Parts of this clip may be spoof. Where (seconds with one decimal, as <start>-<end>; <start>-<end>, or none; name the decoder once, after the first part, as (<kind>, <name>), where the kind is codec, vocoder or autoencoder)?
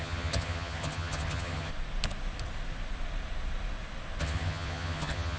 0.0-1.7 (vocoder, HiFi-GAN); 4.2-5.4